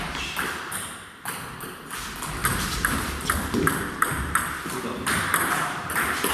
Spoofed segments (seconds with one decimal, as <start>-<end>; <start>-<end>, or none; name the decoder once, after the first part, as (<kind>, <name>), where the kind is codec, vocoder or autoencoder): 2.4-6.3 (vocoder, BigVGAN v2)